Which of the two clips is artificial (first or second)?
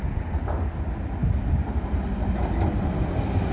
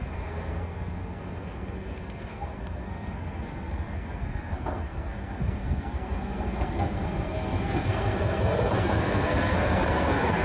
second